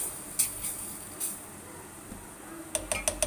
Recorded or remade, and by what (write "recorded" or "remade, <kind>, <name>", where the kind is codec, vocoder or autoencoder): recorded